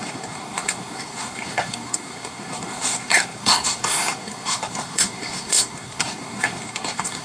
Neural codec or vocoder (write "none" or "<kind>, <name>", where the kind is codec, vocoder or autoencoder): codec, SNAC